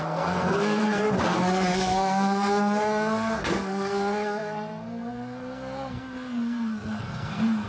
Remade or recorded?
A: remade